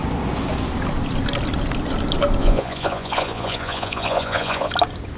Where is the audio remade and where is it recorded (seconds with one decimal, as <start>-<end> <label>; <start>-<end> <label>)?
0.0-2.4 recorded; 2.4-4.7 remade; 4.7-5.2 recorded

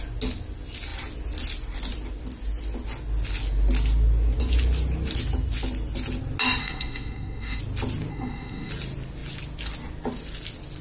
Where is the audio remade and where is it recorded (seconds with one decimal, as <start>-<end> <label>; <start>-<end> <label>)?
0.0-6.6 recorded; 6.6-7.6 remade; 7.6-8.1 recorded; 8.1-8.7 remade; 8.7-10.8 recorded

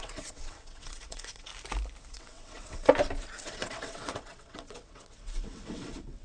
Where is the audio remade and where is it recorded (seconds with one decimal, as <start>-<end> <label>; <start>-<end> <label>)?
0.0-1.5 remade; 1.5-2.1 recorded; 2.1-2.9 remade; 2.9-3.4 recorded; 3.4-6.2 remade

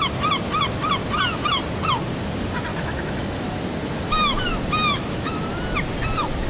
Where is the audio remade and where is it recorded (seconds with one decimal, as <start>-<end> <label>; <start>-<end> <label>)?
0.0-2.7 recorded; 2.7-3.6 remade; 3.6-4.9 recorded; 4.9-5.5 remade; 5.5-6.5 recorded

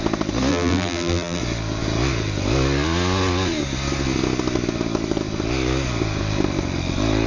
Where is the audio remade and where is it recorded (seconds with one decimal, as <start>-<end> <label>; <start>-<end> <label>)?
0.0-0.5 recorded; 0.5-1.4 remade; 1.4-7.3 recorded